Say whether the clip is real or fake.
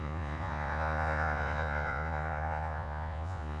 fake